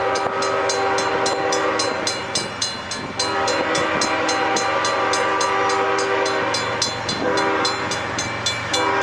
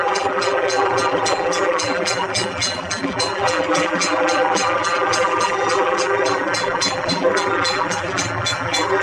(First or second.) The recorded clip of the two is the first